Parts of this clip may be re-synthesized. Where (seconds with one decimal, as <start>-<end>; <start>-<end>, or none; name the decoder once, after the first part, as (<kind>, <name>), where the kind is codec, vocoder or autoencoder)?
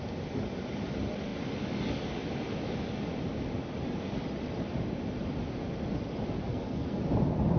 6.4-7.0 (codec, SNAC)